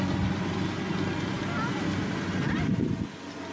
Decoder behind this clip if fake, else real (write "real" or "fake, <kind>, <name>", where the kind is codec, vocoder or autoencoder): real